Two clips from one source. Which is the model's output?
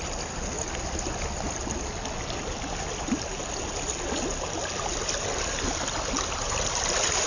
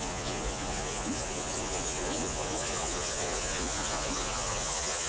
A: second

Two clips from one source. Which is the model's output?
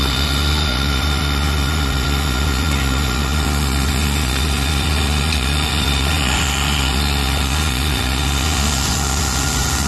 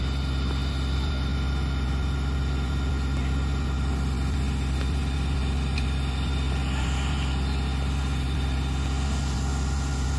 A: first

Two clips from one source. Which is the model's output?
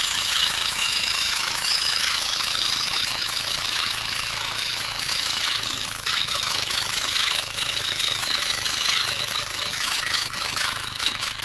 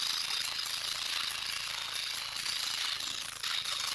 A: first